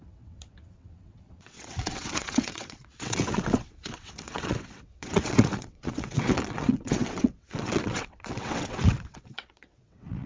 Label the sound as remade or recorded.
remade